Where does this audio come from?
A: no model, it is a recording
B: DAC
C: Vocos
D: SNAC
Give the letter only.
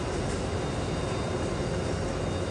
A